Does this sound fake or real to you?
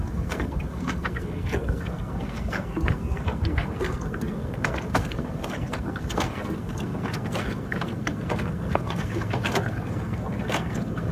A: fake